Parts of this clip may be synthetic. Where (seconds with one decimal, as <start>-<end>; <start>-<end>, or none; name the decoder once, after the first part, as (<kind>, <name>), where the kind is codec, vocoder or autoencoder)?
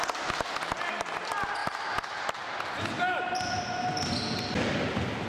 none